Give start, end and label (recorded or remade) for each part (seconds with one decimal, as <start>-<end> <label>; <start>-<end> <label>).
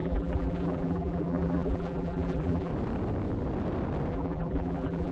0.0-2.7 remade; 2.7-4.1 recorded; 4.1-5.1 remade